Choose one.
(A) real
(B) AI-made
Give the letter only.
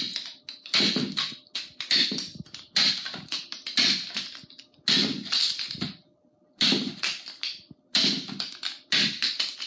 A